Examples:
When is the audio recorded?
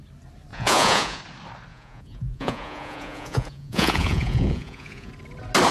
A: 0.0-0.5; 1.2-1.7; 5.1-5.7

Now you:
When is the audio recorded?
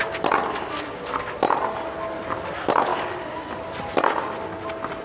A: 0.0-5.0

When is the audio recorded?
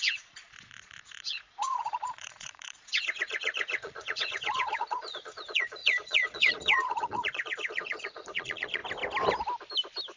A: 8.8-10.2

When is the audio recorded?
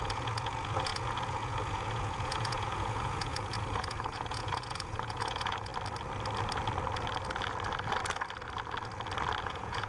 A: 5.7-9.4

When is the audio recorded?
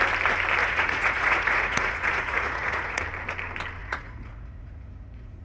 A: 0.0-0.6; 3.0-3.8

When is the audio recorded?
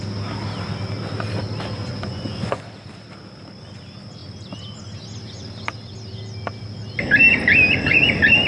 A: 0.0-1.8; 2.6-8.5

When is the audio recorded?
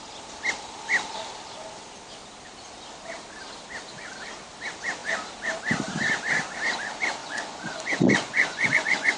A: 0.0-7.2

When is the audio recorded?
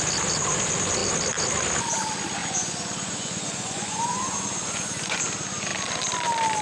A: 0.0-2.4; 5.2-6.6